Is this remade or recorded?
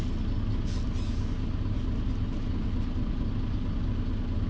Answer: recorded